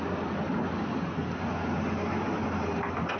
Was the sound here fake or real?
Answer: real